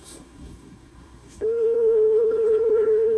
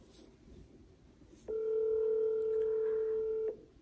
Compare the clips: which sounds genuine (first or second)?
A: second